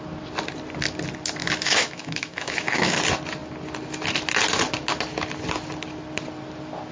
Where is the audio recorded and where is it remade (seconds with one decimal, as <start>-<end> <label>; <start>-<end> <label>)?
0.0-1.4 recorded; 1.4-3.0 remade; 3.0-6.9 recorded